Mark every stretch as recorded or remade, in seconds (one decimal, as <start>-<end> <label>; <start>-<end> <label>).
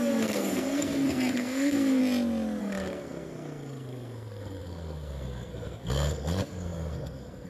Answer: 0.0-2.0 remade; 2.0-2.6 recorded; 2.6-7.5 remade